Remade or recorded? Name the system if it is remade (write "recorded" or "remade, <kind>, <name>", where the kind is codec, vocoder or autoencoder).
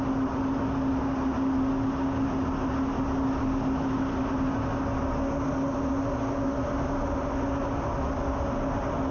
recorded